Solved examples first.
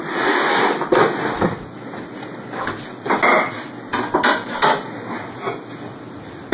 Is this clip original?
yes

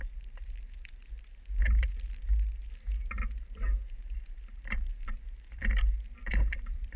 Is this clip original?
no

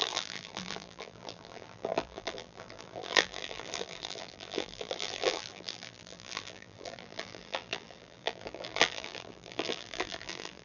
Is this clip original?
no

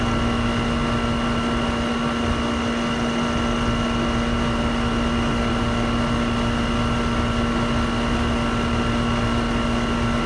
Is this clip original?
yes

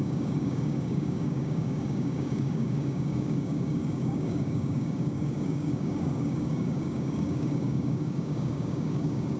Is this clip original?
no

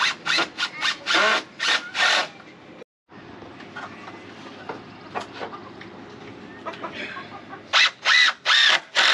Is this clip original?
yes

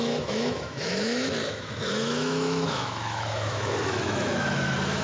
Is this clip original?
no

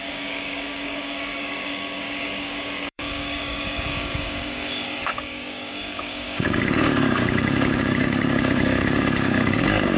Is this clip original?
no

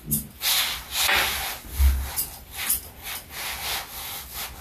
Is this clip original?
yes